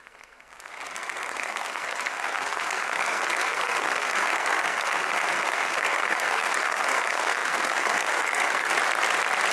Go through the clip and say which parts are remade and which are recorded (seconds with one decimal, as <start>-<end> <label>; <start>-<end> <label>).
0.0-8.7 remade; 8.7-9.5 recorded